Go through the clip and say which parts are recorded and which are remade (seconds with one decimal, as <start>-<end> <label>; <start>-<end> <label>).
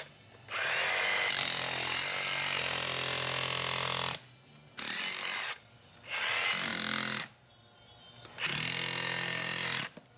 0.0-10.2 recorded